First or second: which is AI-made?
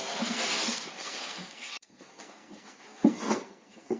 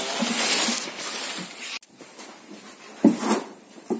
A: first